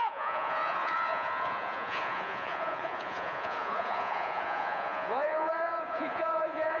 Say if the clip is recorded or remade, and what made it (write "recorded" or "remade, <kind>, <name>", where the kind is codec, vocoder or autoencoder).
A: remade, vocoder, Vocos